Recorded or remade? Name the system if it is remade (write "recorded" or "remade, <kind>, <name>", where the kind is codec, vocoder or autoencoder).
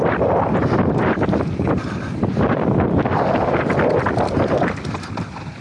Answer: remade, vocoder, BigVGAN v2